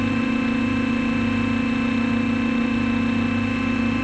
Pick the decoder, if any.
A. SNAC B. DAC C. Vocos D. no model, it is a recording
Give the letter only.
D